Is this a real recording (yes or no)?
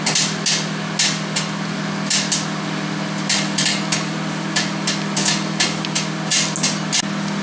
yes